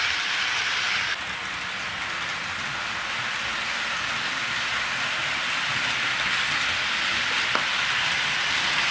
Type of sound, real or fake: real